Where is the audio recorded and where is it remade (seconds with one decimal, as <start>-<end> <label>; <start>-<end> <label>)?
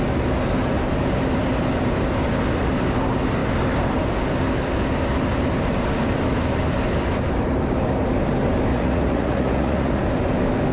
0.0-8.7 recorded; 8.7-10.0 remade; 10.0-10.7 recorded